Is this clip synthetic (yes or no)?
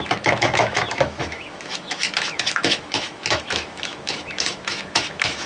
yes